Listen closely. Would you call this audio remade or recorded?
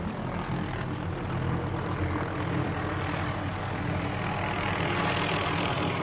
recorded